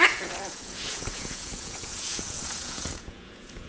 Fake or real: fake